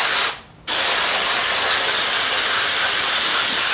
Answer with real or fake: real